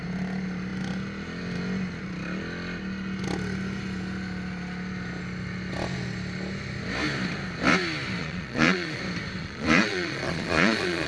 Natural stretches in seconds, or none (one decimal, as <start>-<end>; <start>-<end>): 0.0-8.2; 9.0-9.4